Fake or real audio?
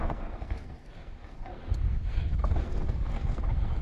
fake